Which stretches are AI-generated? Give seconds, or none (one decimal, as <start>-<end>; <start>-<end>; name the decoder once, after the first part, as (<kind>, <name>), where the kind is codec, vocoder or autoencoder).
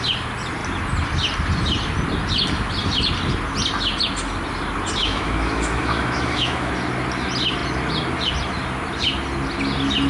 5.0-6.7 (autoencoder, DAC-VAE)